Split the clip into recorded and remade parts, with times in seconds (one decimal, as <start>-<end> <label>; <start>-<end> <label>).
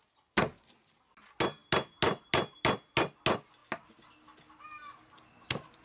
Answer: 0.0-5.8 recorded